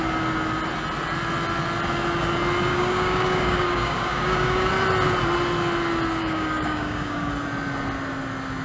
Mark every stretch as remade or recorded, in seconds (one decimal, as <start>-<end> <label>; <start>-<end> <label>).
0.0-2.7 recorded; 2.7-4.7 remade; 4.7-6.2 recorded; 6.2-7.3 remade; 7.3-8.6 recorded

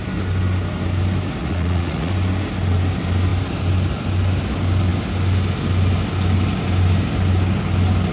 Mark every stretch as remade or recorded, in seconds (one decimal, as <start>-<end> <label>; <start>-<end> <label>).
0.0-1.4 recorded; 1.4-2.1 remade; 2.1-8.1 recorded

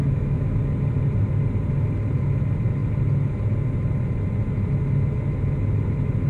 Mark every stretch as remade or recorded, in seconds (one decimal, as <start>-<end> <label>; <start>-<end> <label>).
0.0-0.6 remade; 0.6-6.3 recorded

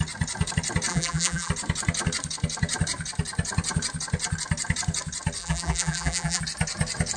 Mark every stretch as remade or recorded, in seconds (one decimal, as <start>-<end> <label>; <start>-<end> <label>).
0.0-0.9 recorded; 0.9-1.5 remade; 1.5-5.4 recorded; 5.4-6.4 remade; 6.4-7.2 recorded

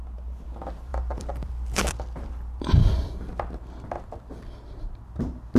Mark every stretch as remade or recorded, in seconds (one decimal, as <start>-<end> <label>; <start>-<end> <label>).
0.0-0.9 recorded; 0.9-2.6 remade; 2.6-5.6 recorded